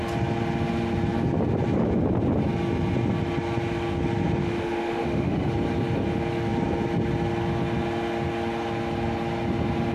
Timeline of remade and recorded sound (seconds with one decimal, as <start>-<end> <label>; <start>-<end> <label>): 0.0-4.4 recorded; 4.4-5.5 remade; 5.5-9.9 recorded